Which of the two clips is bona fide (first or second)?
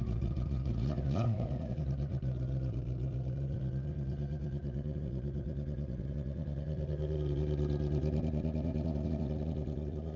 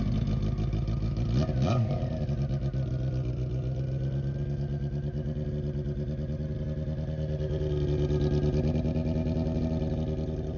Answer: second